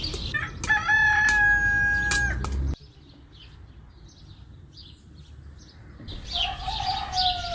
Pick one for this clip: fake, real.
real